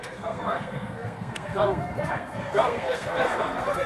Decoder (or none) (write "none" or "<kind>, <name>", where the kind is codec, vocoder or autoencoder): codec, SNAC